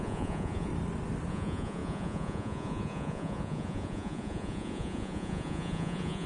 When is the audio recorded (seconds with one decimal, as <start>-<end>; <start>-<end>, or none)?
0.7-1.3